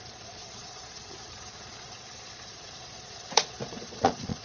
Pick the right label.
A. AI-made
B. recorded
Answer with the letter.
A